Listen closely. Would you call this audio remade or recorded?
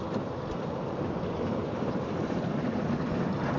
remade